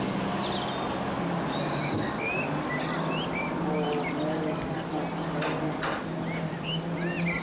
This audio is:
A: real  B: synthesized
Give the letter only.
A